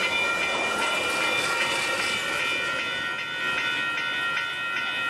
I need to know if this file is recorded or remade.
recorded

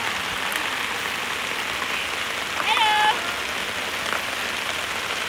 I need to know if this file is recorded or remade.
recorded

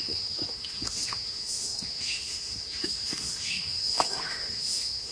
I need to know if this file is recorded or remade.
remade